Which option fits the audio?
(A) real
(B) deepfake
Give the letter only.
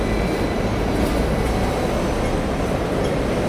A